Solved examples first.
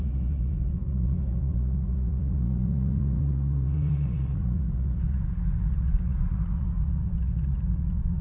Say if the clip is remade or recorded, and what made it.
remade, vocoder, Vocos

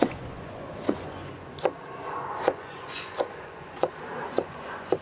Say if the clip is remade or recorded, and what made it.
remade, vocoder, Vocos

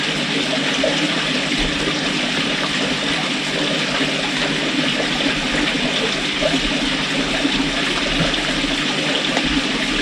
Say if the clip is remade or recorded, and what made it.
recorded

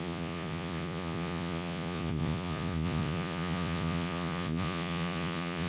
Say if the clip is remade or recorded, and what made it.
remade, vocoder, Vocos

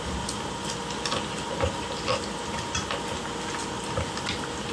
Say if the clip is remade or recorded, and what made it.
recorded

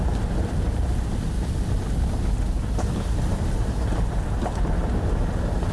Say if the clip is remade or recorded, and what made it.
recorded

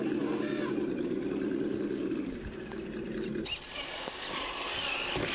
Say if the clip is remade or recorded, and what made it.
recorded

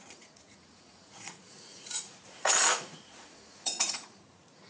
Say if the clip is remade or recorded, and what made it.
remade, vocoder, Vocos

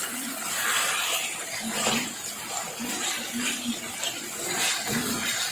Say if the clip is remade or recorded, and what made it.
recorded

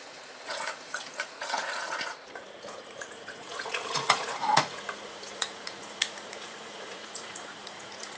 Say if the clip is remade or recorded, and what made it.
remade, vocoder, Vocos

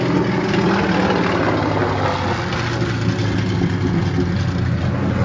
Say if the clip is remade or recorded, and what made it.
recorded